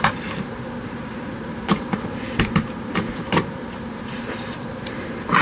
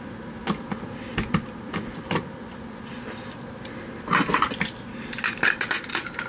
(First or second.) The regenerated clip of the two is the first